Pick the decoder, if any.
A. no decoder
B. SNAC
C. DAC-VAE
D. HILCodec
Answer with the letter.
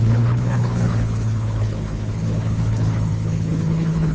D